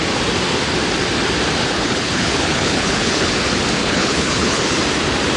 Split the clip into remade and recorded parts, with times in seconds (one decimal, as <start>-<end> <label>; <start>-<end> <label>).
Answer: 0.0-1.6 recorded; 1.6-3.3 remade; 3.3-3.8 recorded; 3.8-4.8 remade; 4.8-5.4 recorded